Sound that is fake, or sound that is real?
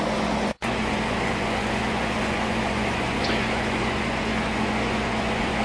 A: fake